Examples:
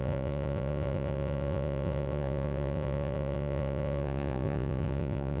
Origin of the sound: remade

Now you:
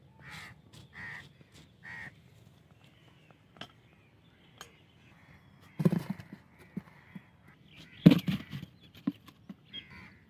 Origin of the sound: recorded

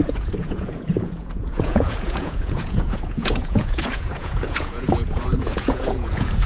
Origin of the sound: remade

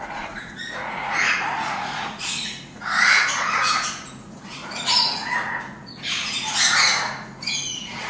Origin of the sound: remade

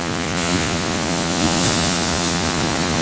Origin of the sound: remade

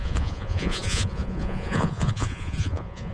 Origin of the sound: remade